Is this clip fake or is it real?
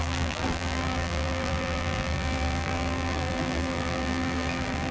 fake